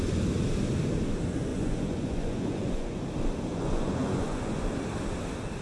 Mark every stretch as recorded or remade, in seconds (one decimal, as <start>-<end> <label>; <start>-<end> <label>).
0.0-1.5 recorded; 1.5-3.0 remade; 3.0-3.5 recorded; 3.5-4.6 remade; 4.6-5.6 recorded